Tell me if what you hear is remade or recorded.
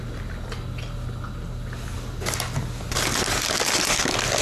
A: recorded